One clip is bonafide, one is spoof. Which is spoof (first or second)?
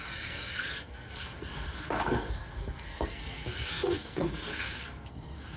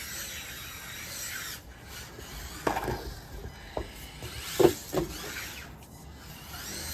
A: first